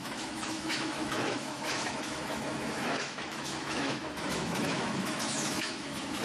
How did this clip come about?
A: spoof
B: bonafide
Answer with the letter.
A